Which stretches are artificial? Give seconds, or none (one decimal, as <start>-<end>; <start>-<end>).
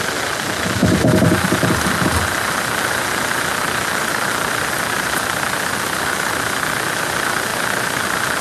none